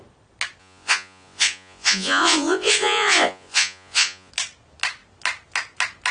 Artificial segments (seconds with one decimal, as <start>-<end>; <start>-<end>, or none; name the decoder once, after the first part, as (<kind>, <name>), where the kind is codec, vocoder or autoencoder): 0.6-4.3 (vocoder, Vocos)